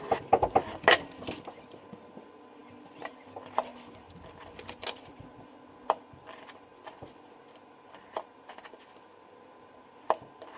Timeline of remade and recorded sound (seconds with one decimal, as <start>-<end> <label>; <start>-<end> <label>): 0.0-10.6 recorded